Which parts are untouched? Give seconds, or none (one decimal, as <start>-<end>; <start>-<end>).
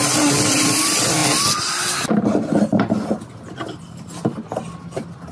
0.0-5.3